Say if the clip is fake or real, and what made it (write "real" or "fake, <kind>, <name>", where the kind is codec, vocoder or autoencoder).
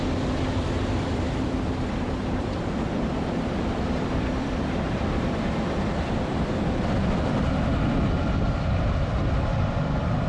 fake, vocoder, BigVGAN v2